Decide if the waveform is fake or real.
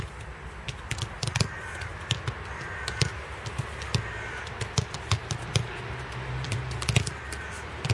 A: real